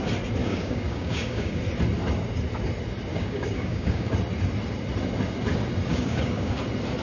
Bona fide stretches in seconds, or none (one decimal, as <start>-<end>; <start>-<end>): 0.0-0.4; 1.6-3.1; 4.1-5.9; 6.6-7.0